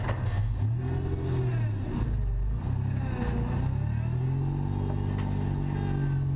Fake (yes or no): no